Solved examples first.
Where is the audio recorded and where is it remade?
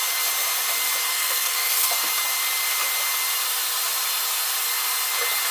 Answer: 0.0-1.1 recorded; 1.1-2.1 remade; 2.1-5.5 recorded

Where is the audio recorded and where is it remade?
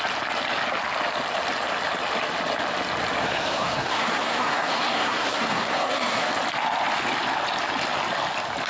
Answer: 0.0-3.2 recorded; 3.2-6.3 remade; 6.3-8.7 recorded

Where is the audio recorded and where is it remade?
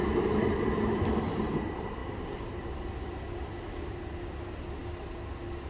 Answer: 0.0-5.7 recorded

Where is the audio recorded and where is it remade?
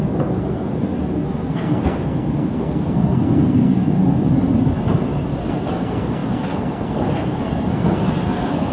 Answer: 0.0-4.0 remade; 4.0-5.4 recorded; 5.4-8.7 remade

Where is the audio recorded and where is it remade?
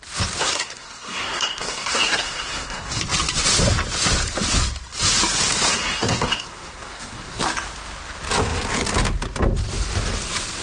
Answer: 0.0-0.4 recorded; 0.4-3.0 remade; 3.0-5.7 recorded; 5.7-7.4 remade; 7.4-10.6 recorded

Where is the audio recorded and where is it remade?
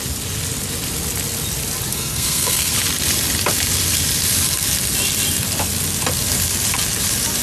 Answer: 0.0-1.9 recorded; 1.9-2.7 remade; 2.7-7.4 recorded